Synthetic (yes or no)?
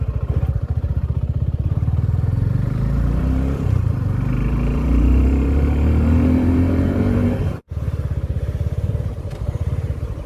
yes